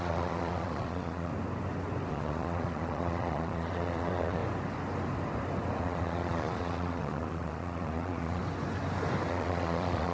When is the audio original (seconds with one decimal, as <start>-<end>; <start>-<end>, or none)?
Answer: 1.3-2.1; 4.4-5.8; 8.4-9.3